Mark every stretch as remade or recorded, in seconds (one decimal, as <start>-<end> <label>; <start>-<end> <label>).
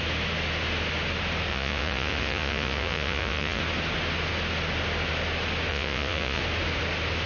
0.0-1.5 recorded; 1.5-3.6 remade; 3.6-5.7 recorded; 5.7-6.4 remade; 6.4-7.3 recorded